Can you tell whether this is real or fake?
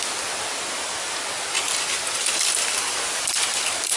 real